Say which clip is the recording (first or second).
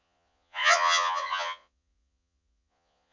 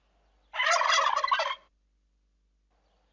second